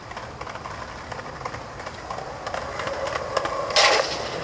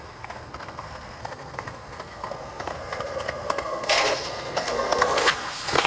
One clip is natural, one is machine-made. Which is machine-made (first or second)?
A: second